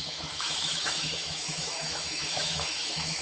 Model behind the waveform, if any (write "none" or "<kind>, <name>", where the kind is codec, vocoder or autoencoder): autoencoder, DAC-VAE